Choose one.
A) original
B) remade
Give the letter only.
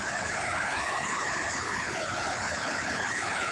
B